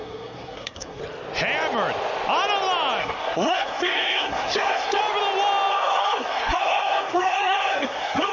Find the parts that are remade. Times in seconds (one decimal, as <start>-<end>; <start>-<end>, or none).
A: 0.0-1.0; 3.0-5.0; 5.7-8.3